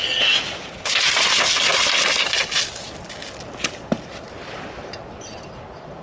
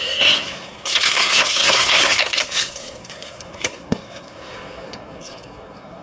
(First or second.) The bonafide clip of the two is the first